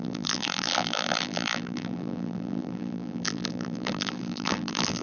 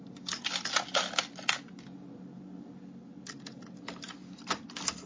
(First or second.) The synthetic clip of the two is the first